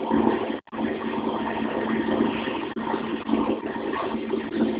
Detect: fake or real real